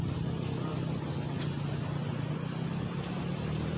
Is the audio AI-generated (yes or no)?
no